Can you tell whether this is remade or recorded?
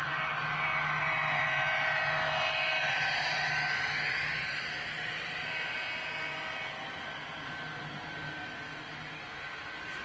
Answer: recorded